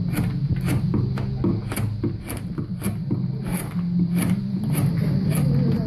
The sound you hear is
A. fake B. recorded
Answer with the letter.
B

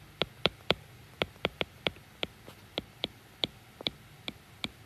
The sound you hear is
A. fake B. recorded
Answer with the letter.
B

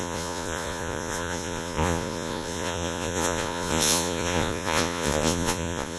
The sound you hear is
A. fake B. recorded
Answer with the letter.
A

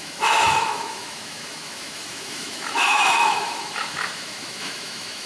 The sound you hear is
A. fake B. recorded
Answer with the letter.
A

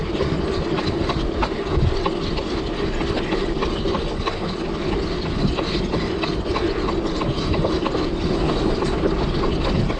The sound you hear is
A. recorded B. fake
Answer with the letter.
A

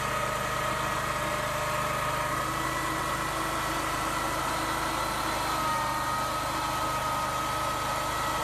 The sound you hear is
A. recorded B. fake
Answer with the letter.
A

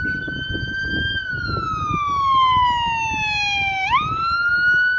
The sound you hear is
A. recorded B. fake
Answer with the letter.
A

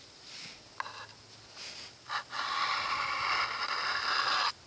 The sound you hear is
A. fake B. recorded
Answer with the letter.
B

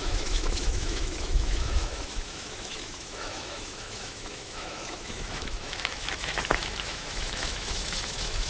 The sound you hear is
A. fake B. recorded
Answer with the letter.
A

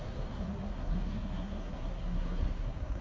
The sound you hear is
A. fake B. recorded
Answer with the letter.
A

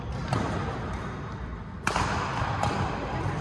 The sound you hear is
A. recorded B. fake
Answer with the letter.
A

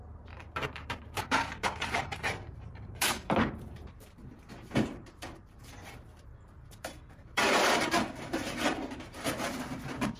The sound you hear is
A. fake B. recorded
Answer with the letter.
A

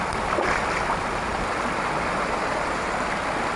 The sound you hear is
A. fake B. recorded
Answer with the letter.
B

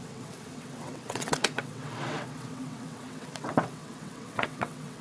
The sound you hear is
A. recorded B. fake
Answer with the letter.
B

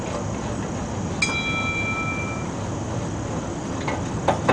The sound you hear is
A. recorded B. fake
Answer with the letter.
A